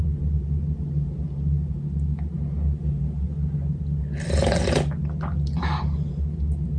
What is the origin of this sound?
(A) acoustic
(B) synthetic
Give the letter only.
A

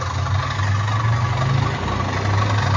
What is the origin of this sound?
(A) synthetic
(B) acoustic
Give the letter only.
B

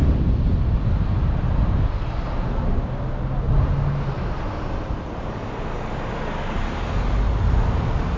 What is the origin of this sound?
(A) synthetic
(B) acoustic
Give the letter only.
B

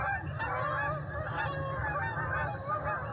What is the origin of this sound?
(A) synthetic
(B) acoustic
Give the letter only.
B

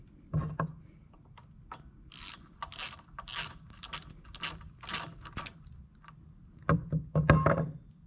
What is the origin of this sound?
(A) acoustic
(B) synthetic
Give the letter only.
A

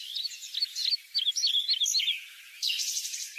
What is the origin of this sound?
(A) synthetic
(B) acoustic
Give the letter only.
B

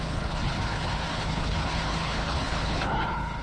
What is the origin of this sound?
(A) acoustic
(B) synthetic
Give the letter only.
B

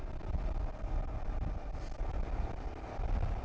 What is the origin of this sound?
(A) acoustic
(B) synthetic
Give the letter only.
A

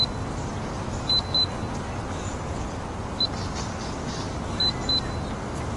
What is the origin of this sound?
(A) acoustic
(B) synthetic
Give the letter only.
A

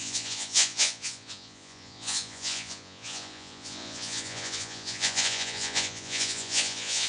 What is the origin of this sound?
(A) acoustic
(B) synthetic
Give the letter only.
B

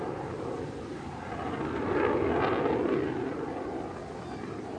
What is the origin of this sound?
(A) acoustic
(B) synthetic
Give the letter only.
A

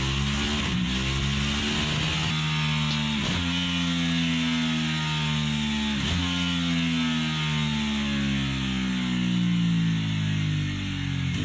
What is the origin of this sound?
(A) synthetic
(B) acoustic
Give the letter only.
B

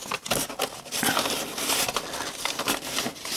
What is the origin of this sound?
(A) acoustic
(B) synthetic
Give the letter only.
A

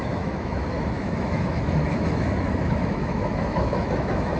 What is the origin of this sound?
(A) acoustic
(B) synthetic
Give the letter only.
B